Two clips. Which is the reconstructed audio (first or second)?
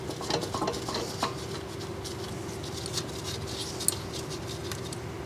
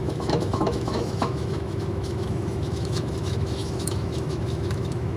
second